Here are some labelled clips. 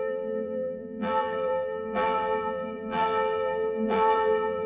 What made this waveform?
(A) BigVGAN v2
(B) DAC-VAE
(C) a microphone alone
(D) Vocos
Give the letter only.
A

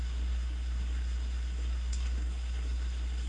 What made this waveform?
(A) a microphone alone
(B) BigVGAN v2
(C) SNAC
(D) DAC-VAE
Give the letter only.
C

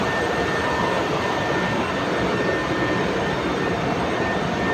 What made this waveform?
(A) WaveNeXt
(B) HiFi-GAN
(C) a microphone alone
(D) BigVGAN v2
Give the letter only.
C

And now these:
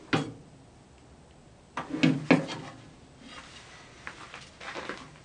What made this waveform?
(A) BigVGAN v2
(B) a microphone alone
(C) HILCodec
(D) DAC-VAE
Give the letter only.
B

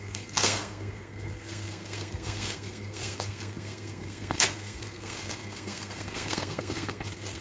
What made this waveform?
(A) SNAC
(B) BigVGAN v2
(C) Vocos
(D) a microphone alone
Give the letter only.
A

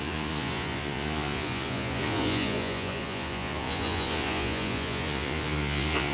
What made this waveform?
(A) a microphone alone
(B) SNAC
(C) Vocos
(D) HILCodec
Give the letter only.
C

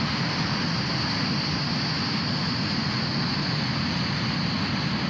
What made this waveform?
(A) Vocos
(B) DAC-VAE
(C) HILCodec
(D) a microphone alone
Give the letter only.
D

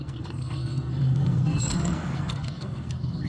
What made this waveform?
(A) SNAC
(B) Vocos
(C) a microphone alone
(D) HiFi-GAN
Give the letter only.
A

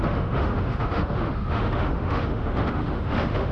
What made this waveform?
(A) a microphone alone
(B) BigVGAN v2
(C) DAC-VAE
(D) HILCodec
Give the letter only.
C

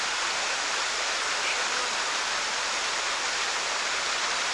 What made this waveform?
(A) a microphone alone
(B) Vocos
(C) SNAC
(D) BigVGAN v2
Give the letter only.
A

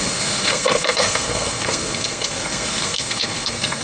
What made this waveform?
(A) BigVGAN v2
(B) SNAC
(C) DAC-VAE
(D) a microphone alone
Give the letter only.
B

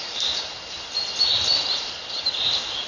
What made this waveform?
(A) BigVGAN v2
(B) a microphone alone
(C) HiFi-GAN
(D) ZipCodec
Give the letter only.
B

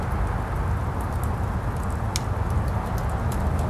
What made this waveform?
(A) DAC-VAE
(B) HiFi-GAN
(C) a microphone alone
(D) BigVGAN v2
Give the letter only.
C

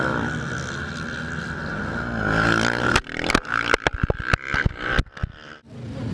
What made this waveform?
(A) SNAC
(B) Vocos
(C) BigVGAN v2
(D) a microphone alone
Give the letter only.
D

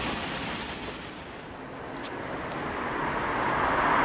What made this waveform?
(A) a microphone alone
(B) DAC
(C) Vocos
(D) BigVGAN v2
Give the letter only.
A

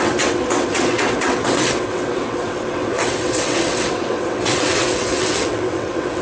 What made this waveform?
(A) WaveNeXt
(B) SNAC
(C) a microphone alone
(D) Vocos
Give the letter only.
A